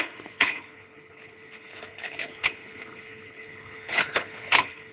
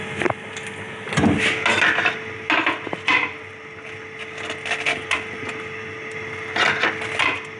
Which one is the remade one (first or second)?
first